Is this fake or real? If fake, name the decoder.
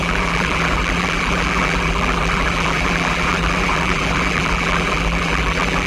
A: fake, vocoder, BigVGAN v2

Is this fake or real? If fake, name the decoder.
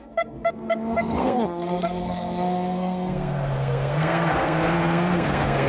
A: fake, codec, SNAC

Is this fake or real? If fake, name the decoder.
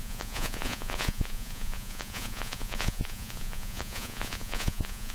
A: fake, vocoder, Vocos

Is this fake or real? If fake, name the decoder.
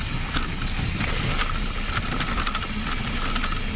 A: real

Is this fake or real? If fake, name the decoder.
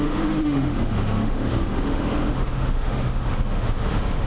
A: fake, autoencoder, DAC-VAE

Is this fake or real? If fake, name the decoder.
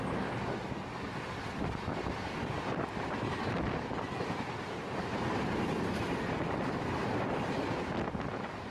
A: real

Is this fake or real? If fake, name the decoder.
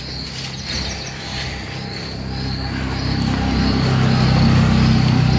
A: real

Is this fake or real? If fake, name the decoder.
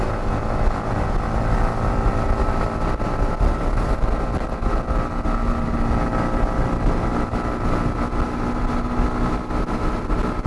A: real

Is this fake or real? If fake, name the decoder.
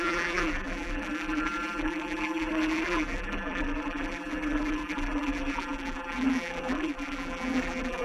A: fake, vocoder, BigVGAN v2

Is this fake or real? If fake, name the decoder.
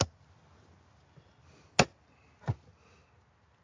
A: real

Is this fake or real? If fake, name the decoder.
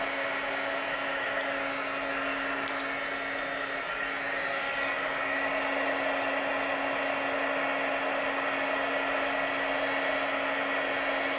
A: real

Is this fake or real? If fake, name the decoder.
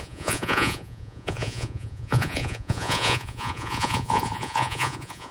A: fake, vocoder, Vocos